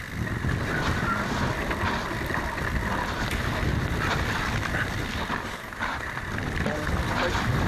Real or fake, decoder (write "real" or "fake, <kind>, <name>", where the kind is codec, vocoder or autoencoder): fake, vocoder, BigVGAN v2